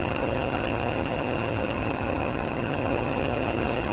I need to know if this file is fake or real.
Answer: fake